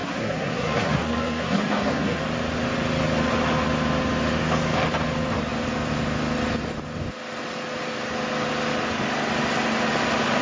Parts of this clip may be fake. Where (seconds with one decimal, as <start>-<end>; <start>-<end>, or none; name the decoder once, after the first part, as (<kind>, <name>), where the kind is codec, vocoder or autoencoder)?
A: 0.0-2.2 (codec, SNAC)